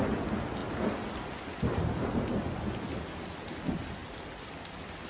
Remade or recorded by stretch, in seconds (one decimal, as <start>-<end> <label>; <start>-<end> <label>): 0.0-5.1 recorded